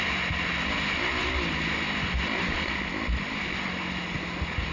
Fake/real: real